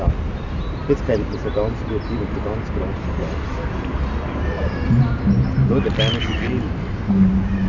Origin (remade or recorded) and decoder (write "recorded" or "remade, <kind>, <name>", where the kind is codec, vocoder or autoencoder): recorded